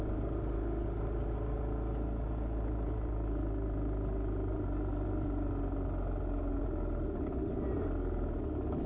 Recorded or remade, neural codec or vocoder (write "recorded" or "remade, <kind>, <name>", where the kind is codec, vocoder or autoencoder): recorded